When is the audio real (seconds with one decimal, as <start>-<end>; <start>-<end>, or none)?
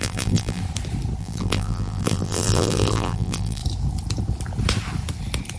0.6-1.2; 3.6-5.6